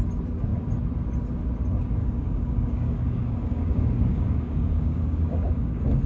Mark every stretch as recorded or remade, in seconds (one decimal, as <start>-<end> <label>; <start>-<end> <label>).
0.0-2.0 recorded; 2.0-6.1 remade